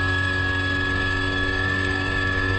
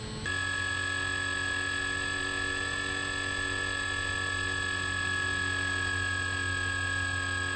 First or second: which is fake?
first